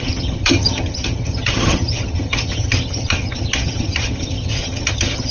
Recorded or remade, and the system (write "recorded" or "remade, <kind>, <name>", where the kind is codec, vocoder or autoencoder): remade, vocoder, HiFi-GAN